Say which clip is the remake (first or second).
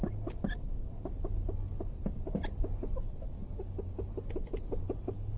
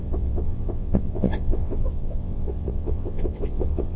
second